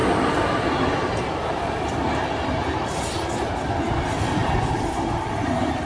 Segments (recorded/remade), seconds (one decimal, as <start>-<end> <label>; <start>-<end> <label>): 0.0-5.9 recorded